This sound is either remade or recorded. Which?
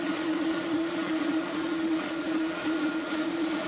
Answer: remade